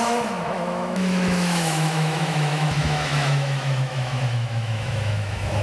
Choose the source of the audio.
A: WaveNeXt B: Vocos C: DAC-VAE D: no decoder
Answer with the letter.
C